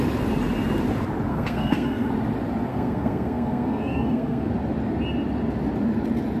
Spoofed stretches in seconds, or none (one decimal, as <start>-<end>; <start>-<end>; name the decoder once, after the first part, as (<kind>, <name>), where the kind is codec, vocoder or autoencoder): 1.3-2.1 (codec, SNAC); 2.7-4.5